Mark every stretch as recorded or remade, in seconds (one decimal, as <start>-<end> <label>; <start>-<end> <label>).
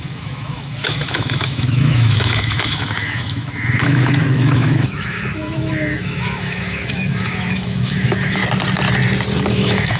0.0-8.4 remade; 8.4-9.5 recorded; 9.5-10.0 remade